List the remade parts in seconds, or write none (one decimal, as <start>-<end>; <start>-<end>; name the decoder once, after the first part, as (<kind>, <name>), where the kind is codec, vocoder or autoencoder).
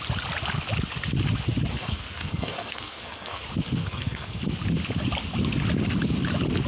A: 1.7-3.4 (codec, SNAC); 3.8-4.4